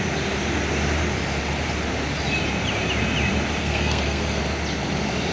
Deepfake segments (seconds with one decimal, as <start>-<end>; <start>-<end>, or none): 3.6-4.4